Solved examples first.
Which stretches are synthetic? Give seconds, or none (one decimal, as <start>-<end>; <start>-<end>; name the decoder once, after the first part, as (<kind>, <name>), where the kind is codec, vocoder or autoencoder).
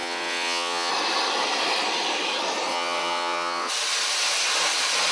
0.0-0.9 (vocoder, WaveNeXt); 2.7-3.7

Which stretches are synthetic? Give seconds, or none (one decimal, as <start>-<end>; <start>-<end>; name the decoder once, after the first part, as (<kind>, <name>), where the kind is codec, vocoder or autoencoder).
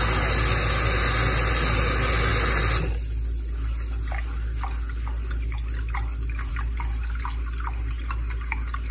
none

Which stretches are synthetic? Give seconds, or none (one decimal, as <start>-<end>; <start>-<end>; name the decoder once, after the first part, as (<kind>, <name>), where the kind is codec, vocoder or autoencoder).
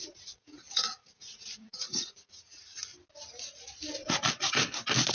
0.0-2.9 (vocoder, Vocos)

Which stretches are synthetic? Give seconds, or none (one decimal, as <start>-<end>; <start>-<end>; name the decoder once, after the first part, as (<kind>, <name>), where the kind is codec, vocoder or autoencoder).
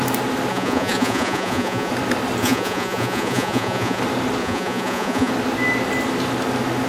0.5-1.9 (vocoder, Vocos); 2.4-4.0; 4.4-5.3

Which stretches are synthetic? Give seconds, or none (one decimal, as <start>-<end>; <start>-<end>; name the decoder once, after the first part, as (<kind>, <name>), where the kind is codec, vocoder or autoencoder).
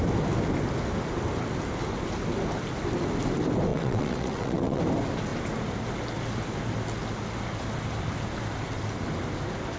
3.7-4.8 (vocoder, WaveNeXt)